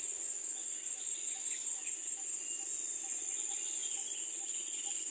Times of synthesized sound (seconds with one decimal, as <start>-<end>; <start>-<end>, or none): 0.6-1.3